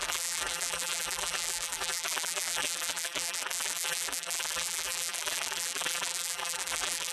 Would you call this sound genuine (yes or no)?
no